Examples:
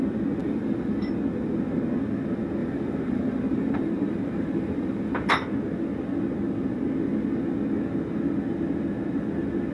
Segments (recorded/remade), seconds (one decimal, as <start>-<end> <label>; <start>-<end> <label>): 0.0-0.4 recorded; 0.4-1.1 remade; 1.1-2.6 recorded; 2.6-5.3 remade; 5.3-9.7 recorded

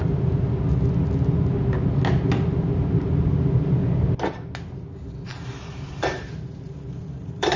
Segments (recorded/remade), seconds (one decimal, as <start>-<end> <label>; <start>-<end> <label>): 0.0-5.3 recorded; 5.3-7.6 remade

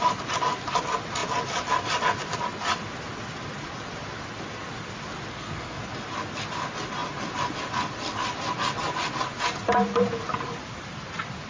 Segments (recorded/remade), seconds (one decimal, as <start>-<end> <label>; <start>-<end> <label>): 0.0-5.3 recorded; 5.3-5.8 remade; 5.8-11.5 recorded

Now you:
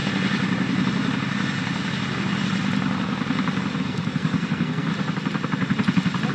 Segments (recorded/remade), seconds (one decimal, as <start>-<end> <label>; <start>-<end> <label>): 0.0-3.8 recorded; 3.8-4.9 remade; 4.9-6.3 recorded

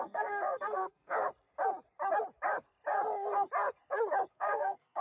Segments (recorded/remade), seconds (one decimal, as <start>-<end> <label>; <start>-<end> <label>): 0.0-1.3 remade; 1.3-4.3 recorded; 4.3-5.0 remade

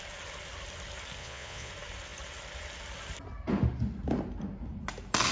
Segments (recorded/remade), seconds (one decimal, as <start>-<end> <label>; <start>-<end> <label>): 0.0-1.2 recorded; 1.2-1.7 remade; 1.7-5.3 recorded